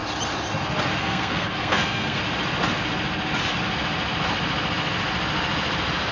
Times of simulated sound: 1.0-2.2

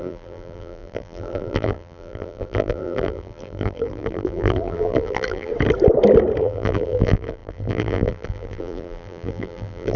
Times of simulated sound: 0.0-5.5; 6.4-10.0